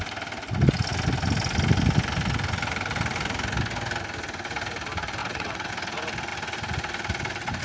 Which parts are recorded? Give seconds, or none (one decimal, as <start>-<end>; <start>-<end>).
0.0-5.2; 5.7-7.6